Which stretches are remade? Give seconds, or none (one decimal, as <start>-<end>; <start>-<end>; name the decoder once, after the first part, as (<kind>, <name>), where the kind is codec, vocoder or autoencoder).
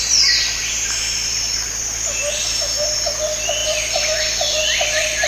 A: none